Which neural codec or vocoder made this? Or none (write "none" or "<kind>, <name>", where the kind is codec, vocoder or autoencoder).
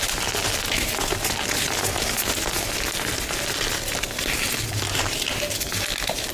none